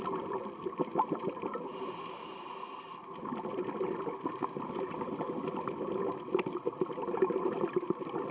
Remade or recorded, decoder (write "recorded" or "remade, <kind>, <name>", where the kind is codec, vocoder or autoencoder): recorded